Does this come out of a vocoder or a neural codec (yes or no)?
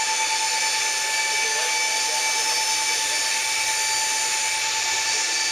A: no